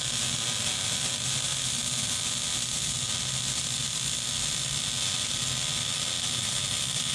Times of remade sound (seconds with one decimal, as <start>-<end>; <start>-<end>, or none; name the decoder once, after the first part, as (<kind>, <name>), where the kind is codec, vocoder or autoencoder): none